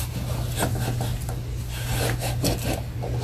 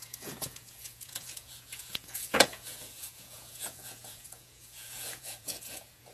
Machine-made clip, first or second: second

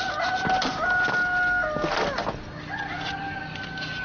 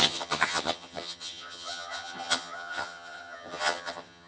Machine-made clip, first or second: second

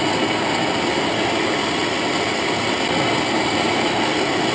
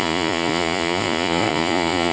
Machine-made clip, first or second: second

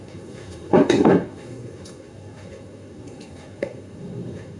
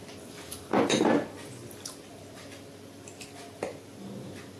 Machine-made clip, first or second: first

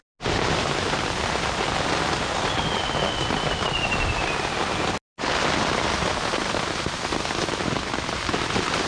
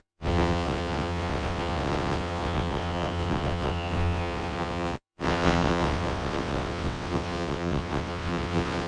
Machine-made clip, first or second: second